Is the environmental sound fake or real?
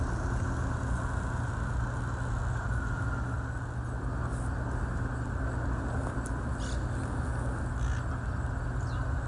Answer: real